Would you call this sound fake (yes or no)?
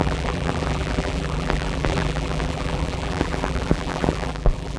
yes